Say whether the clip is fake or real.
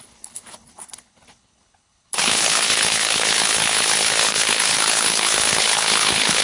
fake